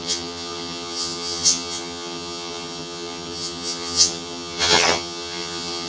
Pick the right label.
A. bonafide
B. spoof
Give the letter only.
B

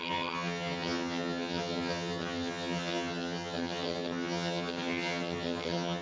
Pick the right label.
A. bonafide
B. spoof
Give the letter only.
B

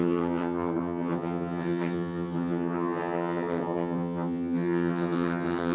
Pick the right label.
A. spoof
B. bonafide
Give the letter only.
A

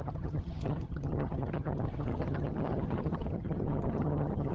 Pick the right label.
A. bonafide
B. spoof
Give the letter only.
B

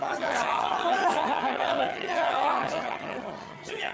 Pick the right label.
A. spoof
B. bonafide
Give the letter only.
A